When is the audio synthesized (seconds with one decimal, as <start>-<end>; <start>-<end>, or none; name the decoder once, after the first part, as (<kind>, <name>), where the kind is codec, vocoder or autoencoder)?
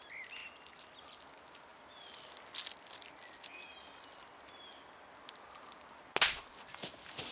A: none